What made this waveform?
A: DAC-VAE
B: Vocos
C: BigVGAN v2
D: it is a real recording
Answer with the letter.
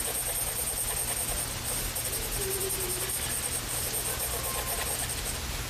D